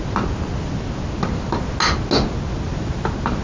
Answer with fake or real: real